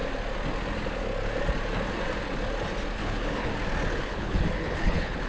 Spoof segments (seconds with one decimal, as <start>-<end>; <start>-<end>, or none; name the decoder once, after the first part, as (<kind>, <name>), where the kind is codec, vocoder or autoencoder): 3.0-3.5 (codec, HILCodec); 4.0-5.3